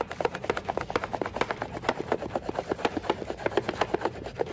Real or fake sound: real